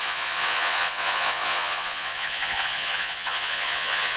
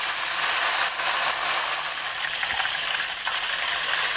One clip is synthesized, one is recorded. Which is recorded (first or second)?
second